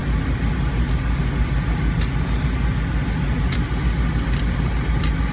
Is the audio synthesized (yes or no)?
no